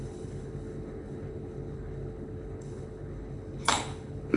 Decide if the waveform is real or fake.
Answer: fake